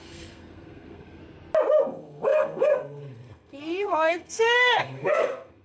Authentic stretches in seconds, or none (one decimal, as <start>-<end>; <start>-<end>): 1.2-1.8